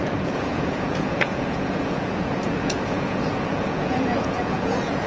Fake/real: fake